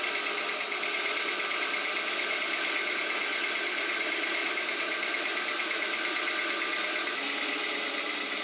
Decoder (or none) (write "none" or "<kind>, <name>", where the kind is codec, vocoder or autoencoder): none